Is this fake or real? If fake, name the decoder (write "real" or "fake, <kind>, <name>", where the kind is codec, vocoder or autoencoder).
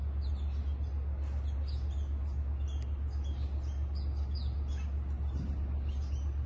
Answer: real